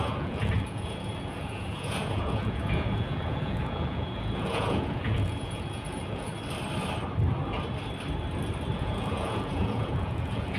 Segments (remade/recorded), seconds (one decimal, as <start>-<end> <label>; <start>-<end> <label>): 0.0-6.3 remade; 6.3-8.7 recorded; 8.7-10.6 remade